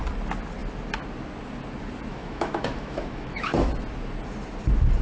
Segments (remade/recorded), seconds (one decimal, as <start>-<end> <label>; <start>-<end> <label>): 0.0-2.1 recorded; 2.1-3.7 remade; 3.7-5.0 recorded